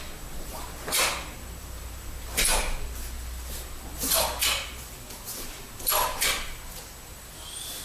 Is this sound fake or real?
real